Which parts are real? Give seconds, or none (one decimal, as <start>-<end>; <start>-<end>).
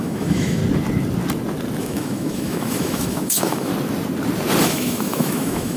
0.6-1.8; 3.7-4.6